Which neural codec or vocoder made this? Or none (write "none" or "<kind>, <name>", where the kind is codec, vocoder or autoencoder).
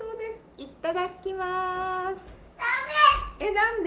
codec, DAC